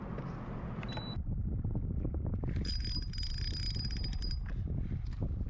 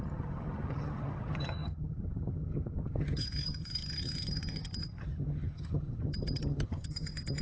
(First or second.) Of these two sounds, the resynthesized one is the second